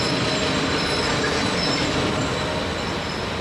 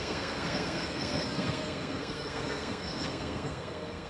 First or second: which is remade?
second